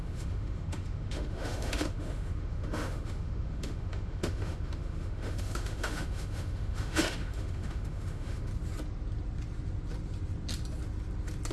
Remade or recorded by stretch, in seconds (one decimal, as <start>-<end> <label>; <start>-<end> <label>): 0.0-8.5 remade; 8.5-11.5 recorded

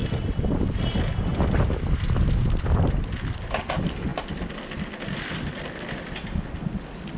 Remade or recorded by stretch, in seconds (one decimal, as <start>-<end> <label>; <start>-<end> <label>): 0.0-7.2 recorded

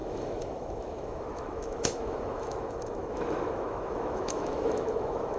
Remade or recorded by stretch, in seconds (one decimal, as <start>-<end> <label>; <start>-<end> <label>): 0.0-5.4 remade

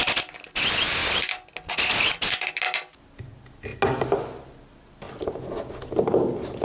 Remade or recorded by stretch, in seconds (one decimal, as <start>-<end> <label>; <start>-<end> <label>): 0.0-6.6 recorded